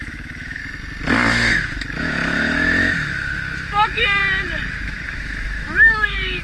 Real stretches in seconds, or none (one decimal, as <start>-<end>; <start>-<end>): 0.6-1.3; 4.2-4.7